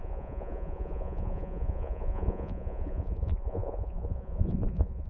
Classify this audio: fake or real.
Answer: fake